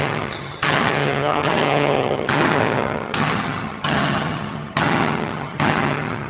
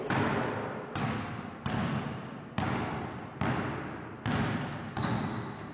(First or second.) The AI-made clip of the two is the first